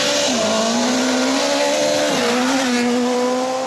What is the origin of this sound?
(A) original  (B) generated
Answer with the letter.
A